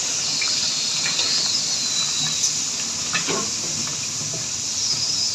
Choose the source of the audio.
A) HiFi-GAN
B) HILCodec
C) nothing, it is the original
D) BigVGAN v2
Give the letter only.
C